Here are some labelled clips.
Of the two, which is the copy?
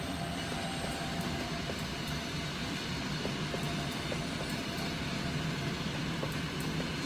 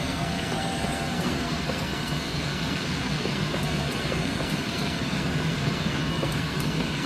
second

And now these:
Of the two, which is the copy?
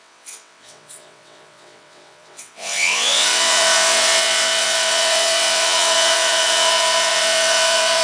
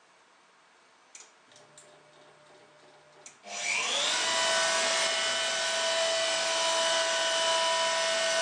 first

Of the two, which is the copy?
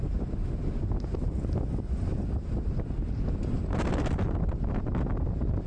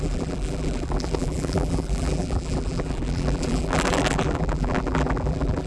second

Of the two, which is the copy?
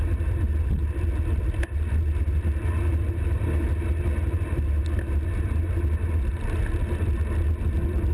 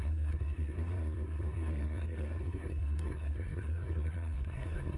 second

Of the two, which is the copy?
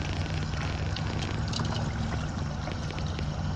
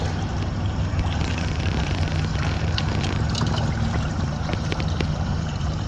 second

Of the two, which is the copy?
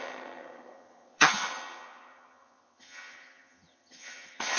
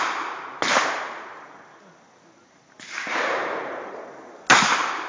first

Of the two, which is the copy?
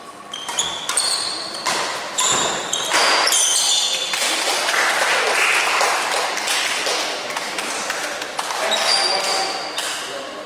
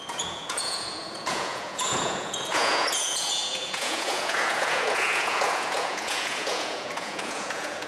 second